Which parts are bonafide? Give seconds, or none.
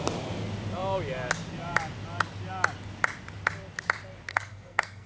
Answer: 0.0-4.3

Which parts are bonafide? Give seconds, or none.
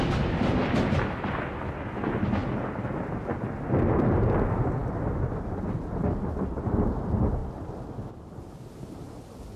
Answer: 0.0-9.6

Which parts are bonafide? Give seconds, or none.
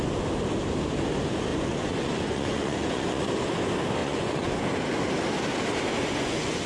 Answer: 0.0-1.5; 3.3-4.0; 4.6-5.9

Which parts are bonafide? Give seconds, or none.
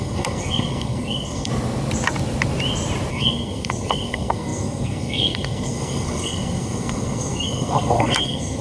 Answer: 1.5-3.1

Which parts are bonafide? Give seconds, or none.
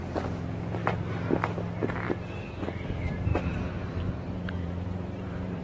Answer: 0.0-3.3